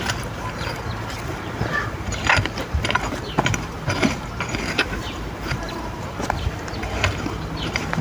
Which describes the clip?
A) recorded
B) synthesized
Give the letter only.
B